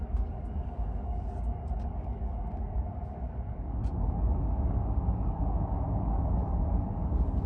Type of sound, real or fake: fake